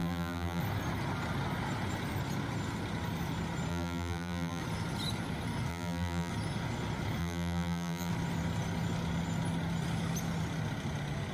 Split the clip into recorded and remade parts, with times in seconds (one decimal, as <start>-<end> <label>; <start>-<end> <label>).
0.0-0.6 remade; 0.6-3.7 recorded; 3.7-4.6 remade; 4.6-5.7 recorded; 5.7-6.3 remade; 6.3-7.2 recorded; 7.2-8.1 remade; 8.1-11.3 recorded